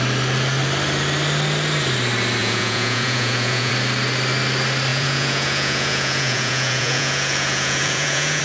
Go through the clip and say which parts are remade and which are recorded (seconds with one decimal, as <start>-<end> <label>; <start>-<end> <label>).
0.0-2.4 recorded; 2.4-3.7 remade; 3.7-4.9 recorded; 4.9-8.4 remade